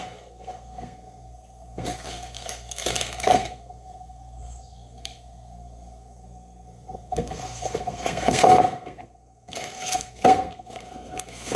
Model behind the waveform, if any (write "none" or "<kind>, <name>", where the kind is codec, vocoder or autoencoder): codec, SNAC